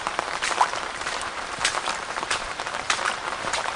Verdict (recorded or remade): remade